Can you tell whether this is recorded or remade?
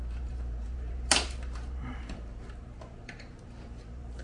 remade